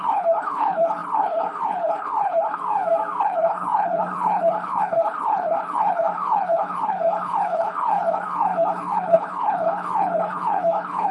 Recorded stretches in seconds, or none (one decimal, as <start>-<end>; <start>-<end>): 2.6-3.2